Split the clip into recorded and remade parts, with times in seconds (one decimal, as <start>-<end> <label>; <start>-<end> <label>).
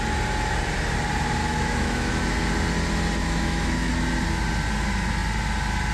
0.0-1.4 recorded; 1.4-2.1 remade; 2.1-3.2 recorded; 3.2-3.9 remade; 3.9-5.9 recorded